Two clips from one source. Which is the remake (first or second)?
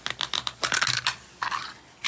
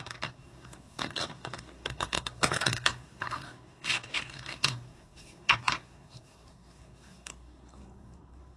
second